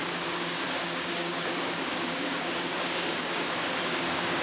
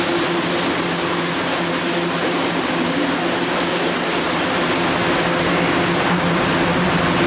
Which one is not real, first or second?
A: first